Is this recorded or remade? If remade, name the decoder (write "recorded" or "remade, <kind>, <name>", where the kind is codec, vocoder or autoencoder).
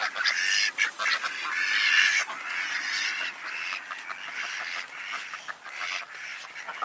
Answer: recorded